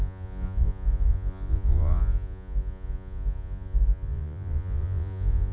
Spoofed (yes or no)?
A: yes